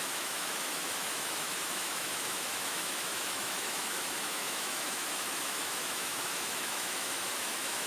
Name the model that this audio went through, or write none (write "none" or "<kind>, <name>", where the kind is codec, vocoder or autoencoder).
autoencoder, DAC-VAE